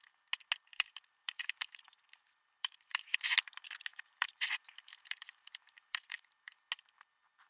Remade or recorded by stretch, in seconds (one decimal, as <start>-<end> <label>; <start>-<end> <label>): 0.0-0.7 recorded; 0.7-3.1 remade; 3.1-3.9 recorded; 3.9-6.6 remade; 6.6-7.5 recorded